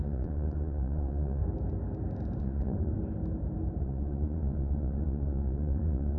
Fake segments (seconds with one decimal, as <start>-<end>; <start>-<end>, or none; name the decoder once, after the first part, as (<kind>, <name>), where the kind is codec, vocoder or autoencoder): 0.0-1.4 (vocoder, Vocos); 2.4-2.9; 3.8-6.2